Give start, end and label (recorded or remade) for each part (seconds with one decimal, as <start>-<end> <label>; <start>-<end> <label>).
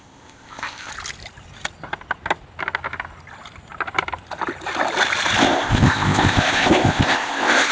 0.0-0.9 remade; 0.9-5.4 recorded; 5.4-7.7 remade